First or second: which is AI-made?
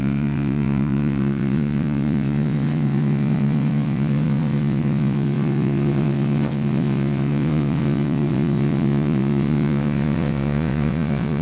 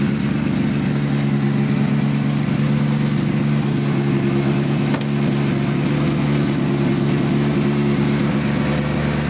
first